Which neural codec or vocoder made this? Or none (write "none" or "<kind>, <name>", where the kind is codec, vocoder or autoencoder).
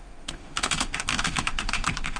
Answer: autoencoder, DAC-VAE